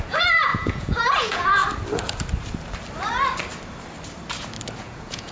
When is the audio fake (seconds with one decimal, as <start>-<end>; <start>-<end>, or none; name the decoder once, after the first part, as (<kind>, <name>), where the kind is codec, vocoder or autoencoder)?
0.0-1.6 (vocoder, Vocos); 4.8-5.3